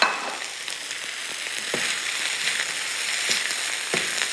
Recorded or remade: recorded